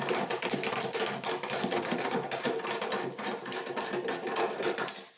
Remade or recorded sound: remade